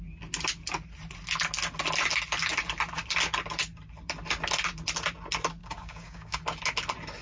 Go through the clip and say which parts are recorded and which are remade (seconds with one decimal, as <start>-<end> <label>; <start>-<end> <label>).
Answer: 0.0-5.6 recorded; 5.6-6.4 remade; 6.4-7.2 recorded